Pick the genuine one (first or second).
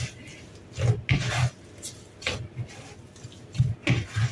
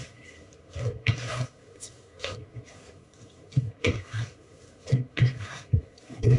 first